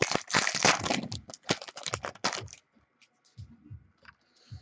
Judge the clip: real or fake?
real